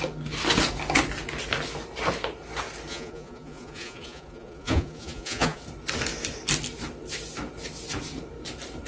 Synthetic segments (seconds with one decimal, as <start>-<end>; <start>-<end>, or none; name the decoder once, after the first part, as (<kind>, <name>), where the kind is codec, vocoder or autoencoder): 2.9-5.6 (vocoder, Vocos)